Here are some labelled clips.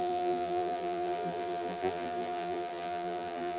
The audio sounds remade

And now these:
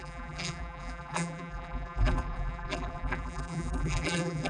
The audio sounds remade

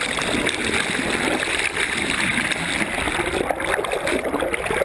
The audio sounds recorded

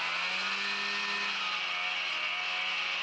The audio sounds recorded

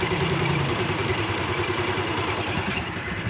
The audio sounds remade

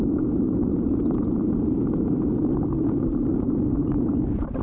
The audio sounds remade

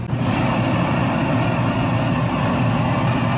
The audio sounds recorded